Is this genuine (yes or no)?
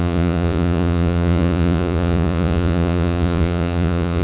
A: no